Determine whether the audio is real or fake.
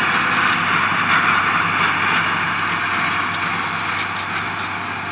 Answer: real